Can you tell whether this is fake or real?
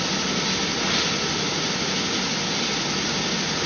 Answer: real